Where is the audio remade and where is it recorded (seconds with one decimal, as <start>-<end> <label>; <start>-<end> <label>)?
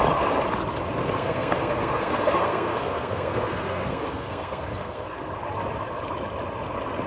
0.0-1.0 recorded; 1.0-5.3 remade; 5.3-7.1 recorded